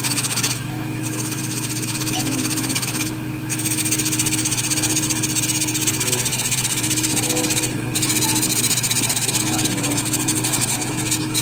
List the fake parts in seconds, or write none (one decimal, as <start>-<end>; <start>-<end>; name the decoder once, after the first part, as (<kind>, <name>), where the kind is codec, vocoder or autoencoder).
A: 0.0-11.4 (autoencoder, DAC-VAE)